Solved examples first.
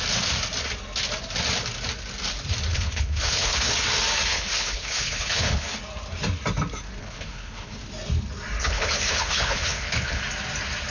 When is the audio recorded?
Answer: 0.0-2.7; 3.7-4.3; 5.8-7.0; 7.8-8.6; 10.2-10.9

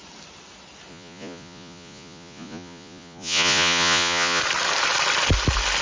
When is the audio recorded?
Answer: 0.0-0.9; 4.4-5.8

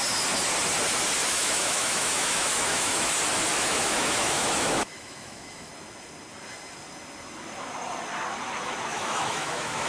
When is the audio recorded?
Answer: 0.0-1.2; 3.1-3.5; 5.7-8.9